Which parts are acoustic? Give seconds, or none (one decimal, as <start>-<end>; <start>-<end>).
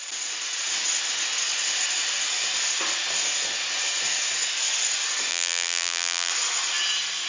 0.0-5.3; 6.3-7.3